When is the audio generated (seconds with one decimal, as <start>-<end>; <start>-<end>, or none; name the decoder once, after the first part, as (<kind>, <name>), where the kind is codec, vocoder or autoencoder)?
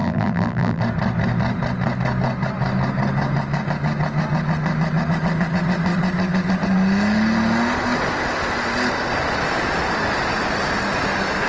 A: 0.0-0.8 (vocoder, BigVGAN v2)